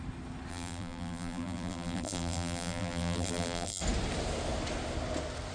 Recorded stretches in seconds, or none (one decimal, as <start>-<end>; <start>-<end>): 0.0-0.5; 3.8-5.5